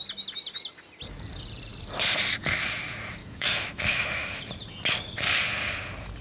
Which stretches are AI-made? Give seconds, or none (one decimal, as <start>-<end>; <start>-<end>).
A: 3.2-4.4